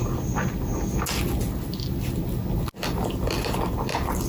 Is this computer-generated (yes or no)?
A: no